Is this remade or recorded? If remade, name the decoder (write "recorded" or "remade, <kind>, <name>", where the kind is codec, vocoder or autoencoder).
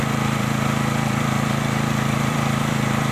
remade, vocoder, BigVGAN v2